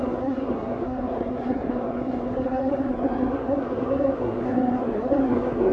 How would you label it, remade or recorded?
remade